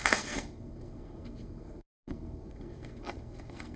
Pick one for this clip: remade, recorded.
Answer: remade